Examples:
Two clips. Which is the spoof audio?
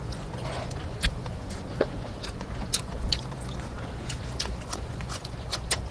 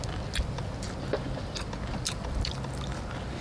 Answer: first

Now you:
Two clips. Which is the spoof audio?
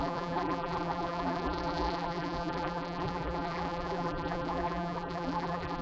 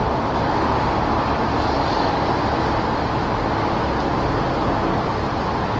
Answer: first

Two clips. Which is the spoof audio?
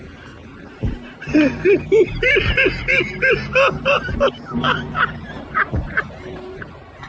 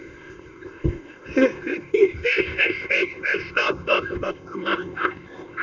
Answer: second